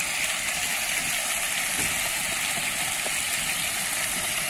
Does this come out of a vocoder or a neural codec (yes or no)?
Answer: no